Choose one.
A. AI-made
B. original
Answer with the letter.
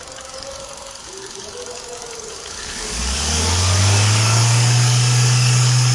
A